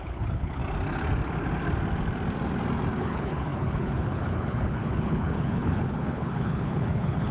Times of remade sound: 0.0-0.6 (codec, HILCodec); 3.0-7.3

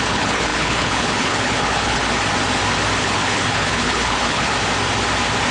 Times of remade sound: 0.0-2.0 (codec, HILCodec); 3.0-4.5